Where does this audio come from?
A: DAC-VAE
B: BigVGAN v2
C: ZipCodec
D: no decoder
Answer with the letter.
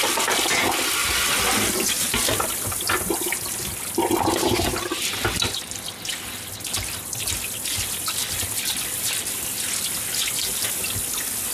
D